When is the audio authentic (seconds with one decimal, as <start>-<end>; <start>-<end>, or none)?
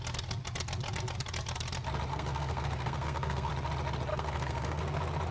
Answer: 0.0-2.1; 3.5-4.1; 4.8-5.3